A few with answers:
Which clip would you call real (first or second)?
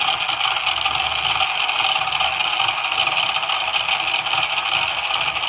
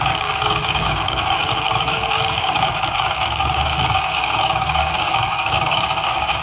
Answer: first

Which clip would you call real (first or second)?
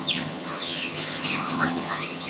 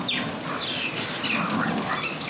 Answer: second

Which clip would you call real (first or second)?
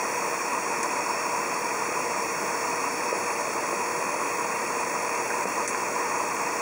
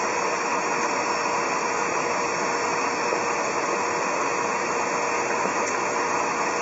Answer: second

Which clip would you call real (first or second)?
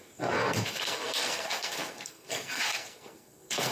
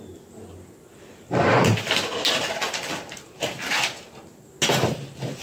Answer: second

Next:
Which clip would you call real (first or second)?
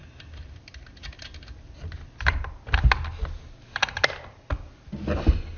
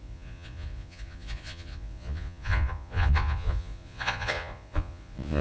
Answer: first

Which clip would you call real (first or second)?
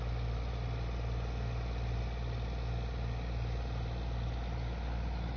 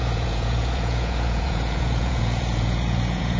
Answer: first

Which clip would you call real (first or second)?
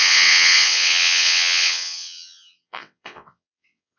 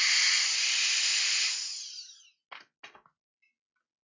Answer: second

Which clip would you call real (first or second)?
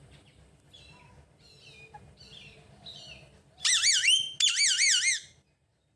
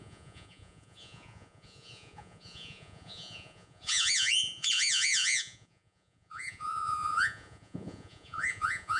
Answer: first